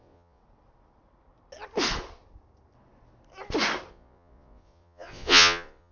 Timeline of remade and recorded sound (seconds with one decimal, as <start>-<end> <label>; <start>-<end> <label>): 0.0-0.4 remade; 0.4-3.9 recorded; 3.9-5.9 remade